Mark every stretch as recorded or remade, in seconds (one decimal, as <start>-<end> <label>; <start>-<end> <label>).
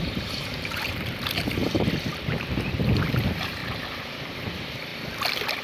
0.0-1.6 remade; 1.6-2.3 recorded; 2.3-3.6 remade; 3.6-4.3 recorded; 4.3-4.9 remade; 4.9-5.6 recorded